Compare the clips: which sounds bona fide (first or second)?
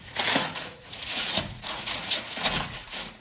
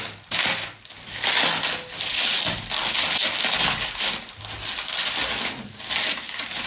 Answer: second